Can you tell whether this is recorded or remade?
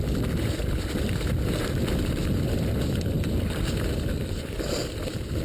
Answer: recorded